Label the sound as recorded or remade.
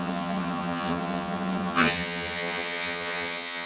remade